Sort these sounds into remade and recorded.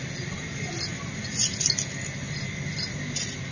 recorded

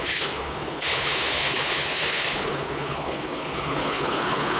remade